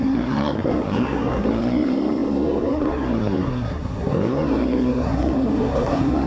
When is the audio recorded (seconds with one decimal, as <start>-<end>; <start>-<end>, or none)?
none